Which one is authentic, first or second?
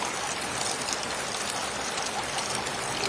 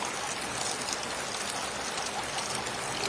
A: second